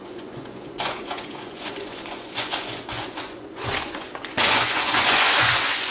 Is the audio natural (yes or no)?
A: no